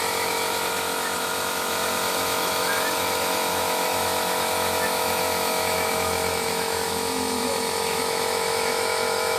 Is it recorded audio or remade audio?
remade